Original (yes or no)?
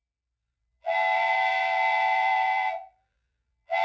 no